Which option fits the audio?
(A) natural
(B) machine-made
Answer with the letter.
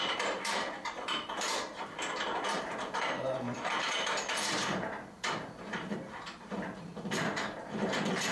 B